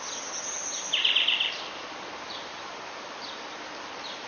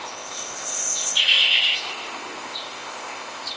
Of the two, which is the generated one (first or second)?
second